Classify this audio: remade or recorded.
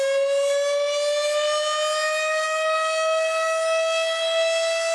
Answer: recorded